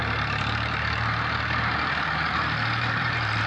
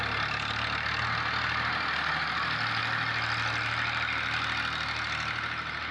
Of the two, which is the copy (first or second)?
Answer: first